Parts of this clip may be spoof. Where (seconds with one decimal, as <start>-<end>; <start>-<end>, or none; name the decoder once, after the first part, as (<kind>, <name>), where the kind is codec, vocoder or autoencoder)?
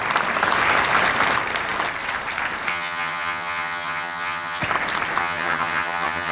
2.7-4.6 (vocoder, HiFi-GAN); 5.2-6.3